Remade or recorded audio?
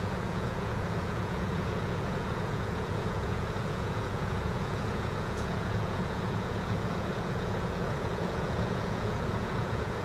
remade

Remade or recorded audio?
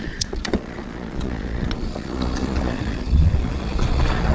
remade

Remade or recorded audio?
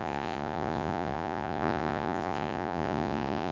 remade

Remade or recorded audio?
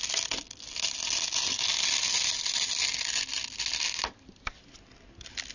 recorded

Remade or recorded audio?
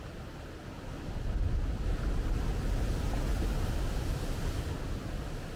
recorded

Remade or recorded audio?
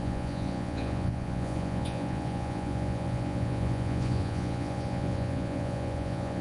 remade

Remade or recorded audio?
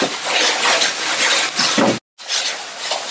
recorded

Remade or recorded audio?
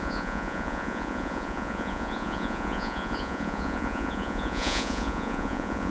remade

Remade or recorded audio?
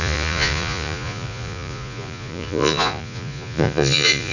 remade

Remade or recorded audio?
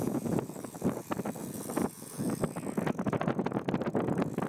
remade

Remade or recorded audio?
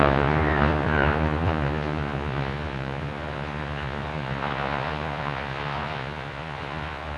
remade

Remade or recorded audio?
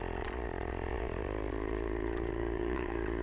remade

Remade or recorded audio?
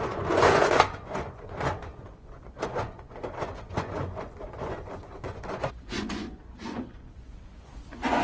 remade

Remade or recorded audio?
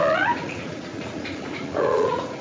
remade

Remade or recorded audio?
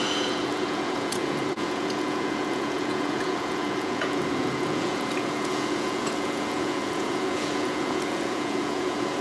remade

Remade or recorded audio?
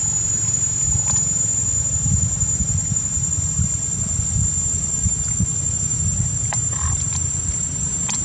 recorded